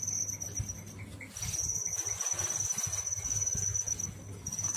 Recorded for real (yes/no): yes